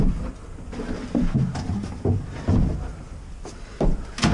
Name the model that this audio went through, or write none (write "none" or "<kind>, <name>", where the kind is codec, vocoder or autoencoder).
none